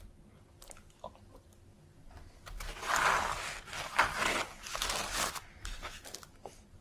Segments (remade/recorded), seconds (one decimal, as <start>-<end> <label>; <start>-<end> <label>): 0.0-6.8 recorded